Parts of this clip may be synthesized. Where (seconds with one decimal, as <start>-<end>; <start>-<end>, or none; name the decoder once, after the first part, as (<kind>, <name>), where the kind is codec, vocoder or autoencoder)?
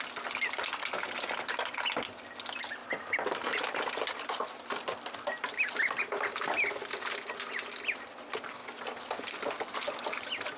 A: none